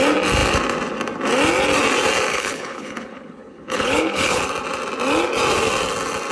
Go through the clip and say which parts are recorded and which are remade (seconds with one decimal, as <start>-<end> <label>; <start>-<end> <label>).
0.0-2.3 recorded; 2.3-4.4 remade; 4.4-6.3 recorded